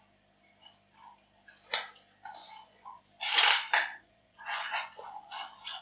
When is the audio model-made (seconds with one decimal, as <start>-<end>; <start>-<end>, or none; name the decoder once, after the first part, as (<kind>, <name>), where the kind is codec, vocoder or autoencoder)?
2.4-3.0 (vocoder, Vocos); 3.9-5.8